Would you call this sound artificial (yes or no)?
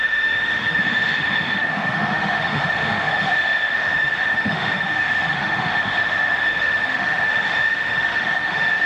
yes